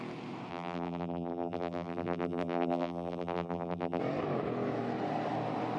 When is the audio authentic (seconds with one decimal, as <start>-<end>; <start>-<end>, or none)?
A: 0.0-0.5; 4.0-5.8

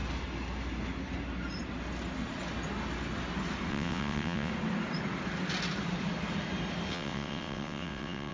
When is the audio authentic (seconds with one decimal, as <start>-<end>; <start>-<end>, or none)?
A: 0.0-3.7; 4.5-6.9

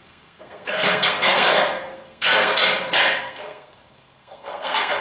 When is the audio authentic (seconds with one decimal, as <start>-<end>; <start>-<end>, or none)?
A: 2.5-3.2

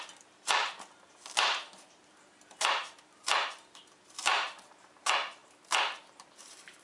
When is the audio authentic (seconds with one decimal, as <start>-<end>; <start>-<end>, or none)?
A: 5.4-6.0

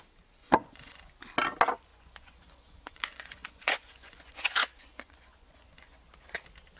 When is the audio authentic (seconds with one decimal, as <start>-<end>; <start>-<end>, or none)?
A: 0.0-0.4; 1.1-1.9; 6.0-6.8

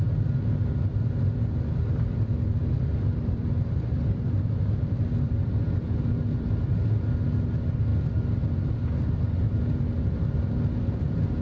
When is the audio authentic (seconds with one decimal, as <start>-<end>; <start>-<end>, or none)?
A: none